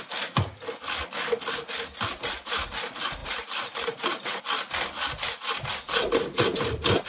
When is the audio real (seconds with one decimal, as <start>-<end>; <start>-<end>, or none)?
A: 0.0-3.2; 4.4-7.1